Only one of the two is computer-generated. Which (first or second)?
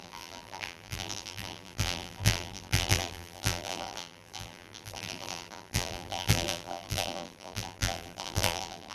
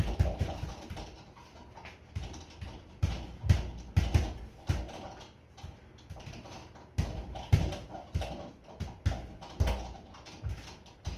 first